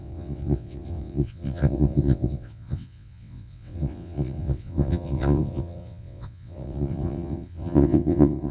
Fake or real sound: fake